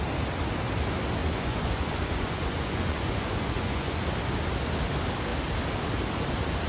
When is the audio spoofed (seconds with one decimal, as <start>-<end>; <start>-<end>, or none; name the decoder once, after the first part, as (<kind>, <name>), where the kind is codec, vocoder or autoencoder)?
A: 1.2-4.0 (vocoder, Vocos)